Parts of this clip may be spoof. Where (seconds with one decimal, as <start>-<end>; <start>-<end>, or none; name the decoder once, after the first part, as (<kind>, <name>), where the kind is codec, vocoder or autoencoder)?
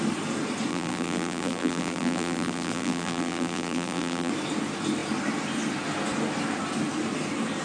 0.7-4.3 (vocoder, BigVGAN v2)